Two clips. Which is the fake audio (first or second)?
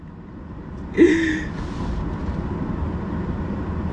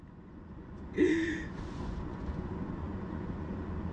second